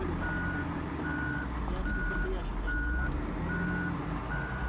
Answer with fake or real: real